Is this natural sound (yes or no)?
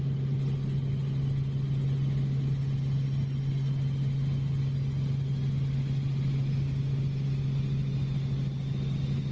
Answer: yes